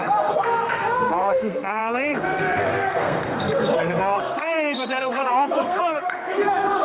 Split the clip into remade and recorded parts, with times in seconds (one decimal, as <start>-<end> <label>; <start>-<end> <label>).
0.0-6.8 remade